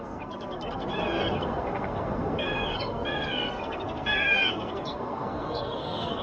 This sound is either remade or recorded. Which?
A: remade